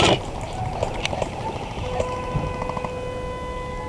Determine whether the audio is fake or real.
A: real